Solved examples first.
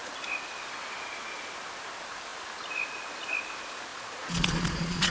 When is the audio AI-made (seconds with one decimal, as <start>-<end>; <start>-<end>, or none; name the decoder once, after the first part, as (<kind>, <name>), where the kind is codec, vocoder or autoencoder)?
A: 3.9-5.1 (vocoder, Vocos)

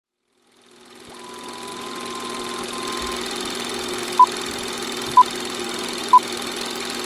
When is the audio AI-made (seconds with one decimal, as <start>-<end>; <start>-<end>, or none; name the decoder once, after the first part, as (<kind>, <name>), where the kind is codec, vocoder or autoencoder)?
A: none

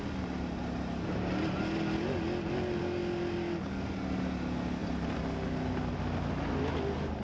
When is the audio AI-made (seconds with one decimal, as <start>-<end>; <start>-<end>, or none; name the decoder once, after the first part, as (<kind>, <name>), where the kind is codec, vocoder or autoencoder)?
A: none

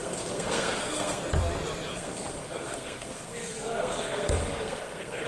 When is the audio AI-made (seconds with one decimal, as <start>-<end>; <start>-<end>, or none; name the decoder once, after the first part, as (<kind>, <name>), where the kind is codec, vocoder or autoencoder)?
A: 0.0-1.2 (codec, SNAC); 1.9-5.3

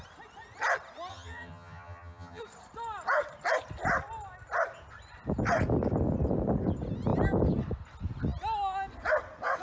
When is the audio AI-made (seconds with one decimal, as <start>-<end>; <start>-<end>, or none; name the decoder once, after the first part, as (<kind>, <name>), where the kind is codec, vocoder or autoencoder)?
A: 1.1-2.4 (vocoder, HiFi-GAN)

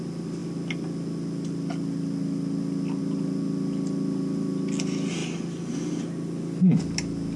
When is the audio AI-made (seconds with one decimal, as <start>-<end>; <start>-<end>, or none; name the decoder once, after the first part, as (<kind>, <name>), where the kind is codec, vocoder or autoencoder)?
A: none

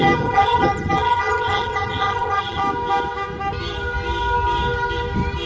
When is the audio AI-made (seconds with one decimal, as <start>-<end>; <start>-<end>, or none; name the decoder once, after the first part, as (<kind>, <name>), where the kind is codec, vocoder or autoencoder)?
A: 0.0-2.6 (vocoder, HiFi-GAN)